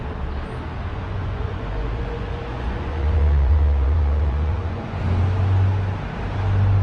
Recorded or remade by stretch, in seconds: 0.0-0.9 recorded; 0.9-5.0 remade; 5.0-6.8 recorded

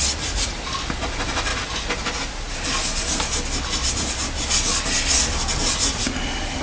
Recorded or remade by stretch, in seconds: 0.0-6.6 recorded